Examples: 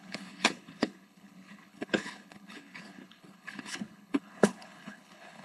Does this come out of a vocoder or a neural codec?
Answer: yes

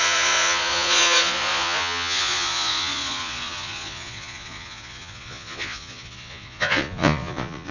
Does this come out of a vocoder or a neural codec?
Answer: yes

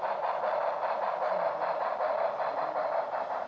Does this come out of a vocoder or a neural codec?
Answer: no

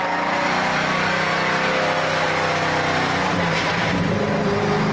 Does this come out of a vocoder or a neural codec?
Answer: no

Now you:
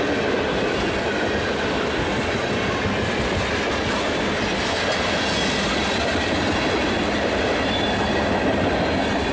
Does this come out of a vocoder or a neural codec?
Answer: no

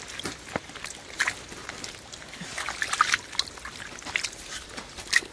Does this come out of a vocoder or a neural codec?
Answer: no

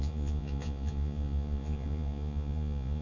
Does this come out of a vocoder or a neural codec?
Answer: yes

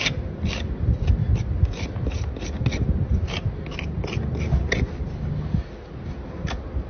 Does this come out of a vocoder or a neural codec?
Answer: no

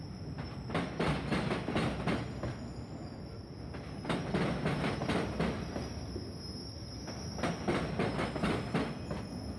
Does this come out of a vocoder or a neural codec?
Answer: no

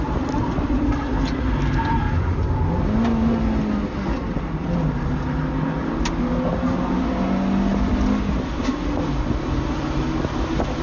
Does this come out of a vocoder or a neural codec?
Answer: no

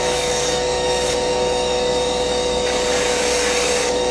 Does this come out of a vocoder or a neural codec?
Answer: yes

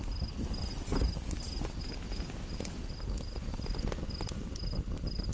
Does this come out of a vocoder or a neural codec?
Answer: no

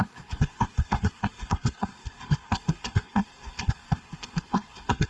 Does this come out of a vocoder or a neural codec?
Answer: yes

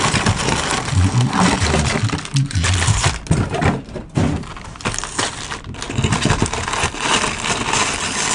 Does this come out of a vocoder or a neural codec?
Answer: no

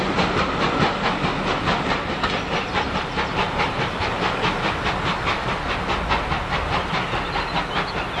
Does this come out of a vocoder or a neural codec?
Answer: no